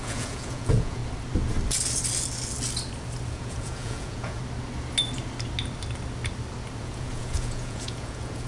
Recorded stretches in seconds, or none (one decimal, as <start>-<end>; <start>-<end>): 1.0-3.3; 4.4-6.8